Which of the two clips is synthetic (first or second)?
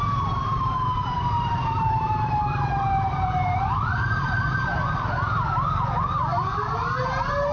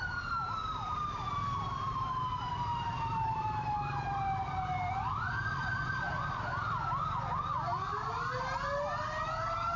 first